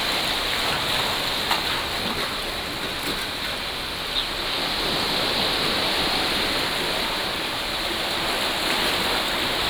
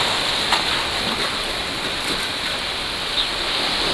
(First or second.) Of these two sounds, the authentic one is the first